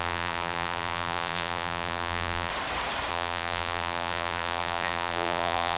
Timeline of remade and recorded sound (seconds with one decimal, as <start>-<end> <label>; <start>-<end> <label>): 0.0-2.5 remade; 2.5-3.1 recorded; 3.1-5.8 remade